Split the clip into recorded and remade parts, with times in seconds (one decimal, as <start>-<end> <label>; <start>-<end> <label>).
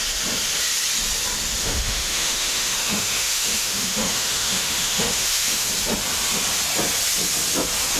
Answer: 0.0-1.6 recorded; 1.6-5.7 remade; 5.7-8.0 recorded